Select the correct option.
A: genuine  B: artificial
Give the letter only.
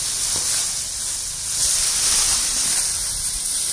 A